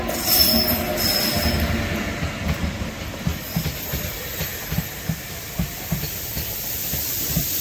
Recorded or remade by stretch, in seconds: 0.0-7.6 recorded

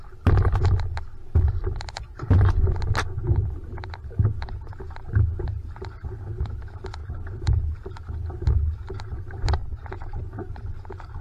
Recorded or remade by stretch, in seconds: 0.0-7.0 recorded; 7.0-7.8 remade; 7.8-9.6 recorded; 9.6-11.2 remade

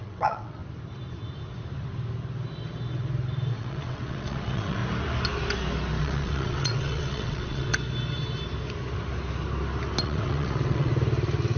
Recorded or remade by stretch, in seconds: 0.0-0.6 remade; 0.6-3.5 recorded; 3.5-4.8 remade; 4.8-6.0 recorded; 6.0-7.7 remade; 7.7-10.0 recorded; 10.0-10.9 remade; 10.9-11.6 recorded